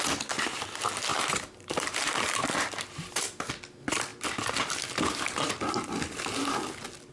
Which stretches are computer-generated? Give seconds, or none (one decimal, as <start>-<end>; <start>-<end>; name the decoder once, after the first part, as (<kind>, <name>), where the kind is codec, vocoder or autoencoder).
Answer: 1.1-3.5 (vocoder, BigVGAN v2)